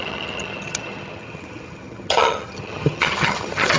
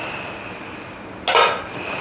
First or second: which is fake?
first